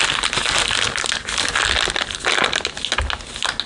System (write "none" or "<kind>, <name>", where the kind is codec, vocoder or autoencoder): none